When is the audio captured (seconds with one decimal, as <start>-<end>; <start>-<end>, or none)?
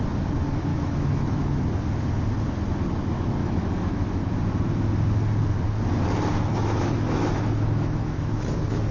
0.0-0.7; 1.6-3.4; 4.2-6.5